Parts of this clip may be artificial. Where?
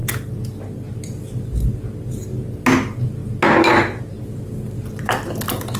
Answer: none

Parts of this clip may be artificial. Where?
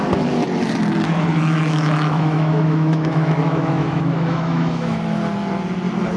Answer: 1.3-5.0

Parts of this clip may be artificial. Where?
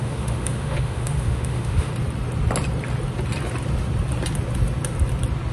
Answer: 0.0-1.9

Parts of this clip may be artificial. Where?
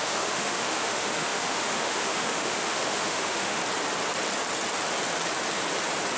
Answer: 0.0-3.6